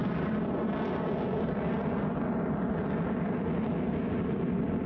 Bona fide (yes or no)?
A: yes